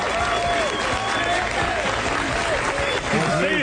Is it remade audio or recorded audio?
recorded